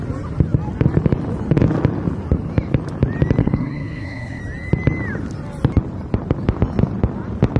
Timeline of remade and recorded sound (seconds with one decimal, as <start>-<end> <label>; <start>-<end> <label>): 0.0-3.4 recorded; 3.4-4.4 remade; 4.4-7.6 recorded